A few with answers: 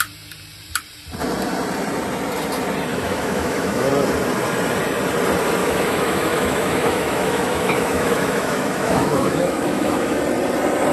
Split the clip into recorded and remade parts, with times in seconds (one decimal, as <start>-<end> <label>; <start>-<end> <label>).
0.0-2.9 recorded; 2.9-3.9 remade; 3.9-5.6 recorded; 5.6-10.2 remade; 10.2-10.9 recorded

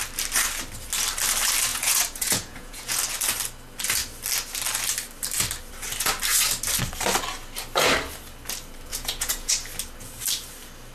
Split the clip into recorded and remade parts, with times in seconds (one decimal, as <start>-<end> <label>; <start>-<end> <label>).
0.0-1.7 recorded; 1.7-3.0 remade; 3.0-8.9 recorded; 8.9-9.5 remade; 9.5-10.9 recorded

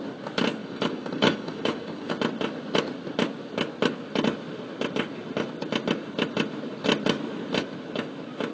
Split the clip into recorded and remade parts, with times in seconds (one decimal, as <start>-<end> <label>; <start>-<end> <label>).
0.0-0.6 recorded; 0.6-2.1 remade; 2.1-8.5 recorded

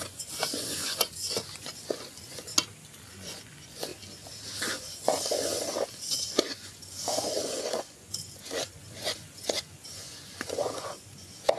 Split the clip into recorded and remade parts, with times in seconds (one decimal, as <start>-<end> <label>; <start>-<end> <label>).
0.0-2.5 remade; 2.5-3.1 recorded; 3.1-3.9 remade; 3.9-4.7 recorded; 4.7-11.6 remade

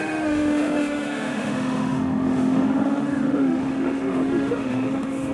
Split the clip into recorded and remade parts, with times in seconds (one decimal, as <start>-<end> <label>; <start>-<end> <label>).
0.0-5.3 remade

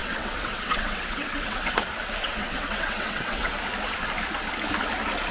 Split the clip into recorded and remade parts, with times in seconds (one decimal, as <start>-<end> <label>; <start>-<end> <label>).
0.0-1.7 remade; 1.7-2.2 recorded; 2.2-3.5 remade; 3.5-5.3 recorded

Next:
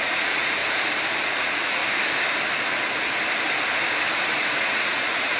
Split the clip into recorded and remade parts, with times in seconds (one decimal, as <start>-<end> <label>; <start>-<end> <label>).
0.0-0.6 remade; 0.6-1.3 recorded; 1.3-1.8 remade; 1.8-4.6 recorded; 4.6-5.4 remade

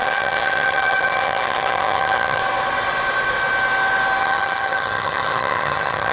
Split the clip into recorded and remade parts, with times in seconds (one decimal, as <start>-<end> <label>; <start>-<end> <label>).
0.0-2.4 remade; 2.4-4.2 recorded; 4.2-6.1 remade